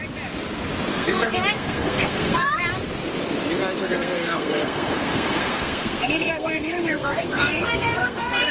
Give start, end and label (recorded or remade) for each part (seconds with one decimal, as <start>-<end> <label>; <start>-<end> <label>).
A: 0.0-0.9 recorded; 0.9-2.6 remade; 2.6-3.8 recorded; 3.8-8.5 remade